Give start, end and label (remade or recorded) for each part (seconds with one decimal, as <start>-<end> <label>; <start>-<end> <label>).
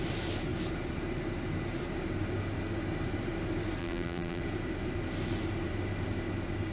0.0-3.8 recorded; 3.8-4.4 remade; 4.4-6.7 recorded